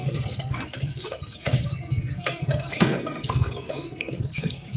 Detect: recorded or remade remade